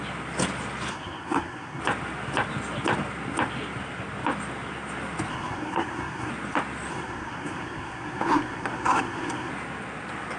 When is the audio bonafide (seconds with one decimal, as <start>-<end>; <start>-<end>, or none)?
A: 0.0-0.9; 1.8-5.3; 6.3-6.9; 9.5-10.4